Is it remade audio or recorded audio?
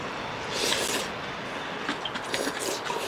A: recorded